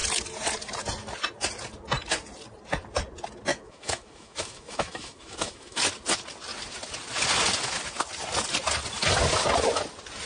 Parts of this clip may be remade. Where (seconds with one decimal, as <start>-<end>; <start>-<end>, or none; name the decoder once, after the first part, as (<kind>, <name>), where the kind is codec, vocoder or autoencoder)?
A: 3.5-5.8 (autoencoder, DAC-VAE)